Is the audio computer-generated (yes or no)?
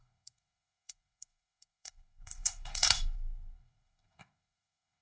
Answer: yes